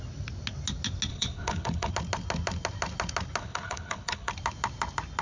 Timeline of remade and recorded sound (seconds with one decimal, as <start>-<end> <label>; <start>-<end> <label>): 0.0-1.1 recorded; 1.1-1.9 remade; 1.9-3.4 recorded; 3.4-4.3 remade; 4.3-5.2 recorded